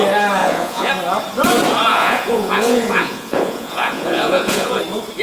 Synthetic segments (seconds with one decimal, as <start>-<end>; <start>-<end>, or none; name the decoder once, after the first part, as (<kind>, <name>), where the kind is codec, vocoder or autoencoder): 0.4-0.9 (vocoder, Vocos); 1.9-4.8